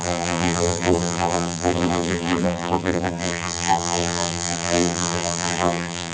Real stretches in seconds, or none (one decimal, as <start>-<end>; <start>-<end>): none